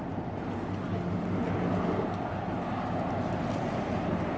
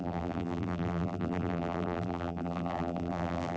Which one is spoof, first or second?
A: second